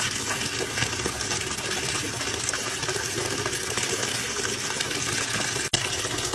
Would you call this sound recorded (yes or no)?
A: yes